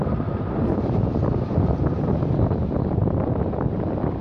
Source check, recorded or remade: recorded